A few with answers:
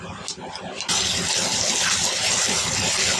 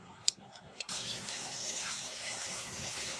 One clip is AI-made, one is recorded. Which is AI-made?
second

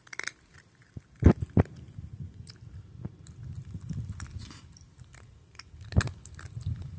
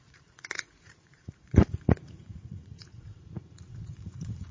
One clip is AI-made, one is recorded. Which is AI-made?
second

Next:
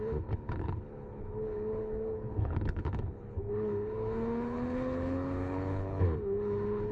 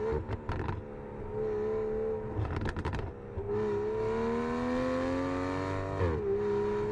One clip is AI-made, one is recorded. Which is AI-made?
first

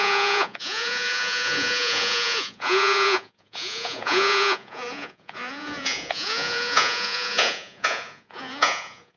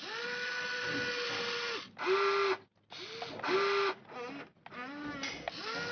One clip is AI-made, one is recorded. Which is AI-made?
first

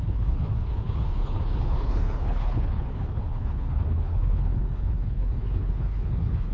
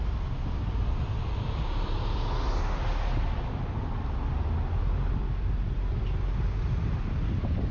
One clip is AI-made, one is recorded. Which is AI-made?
first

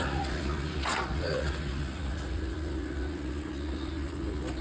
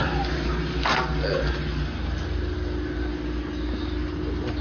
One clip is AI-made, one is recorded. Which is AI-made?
first